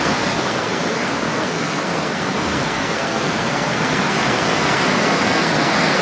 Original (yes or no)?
no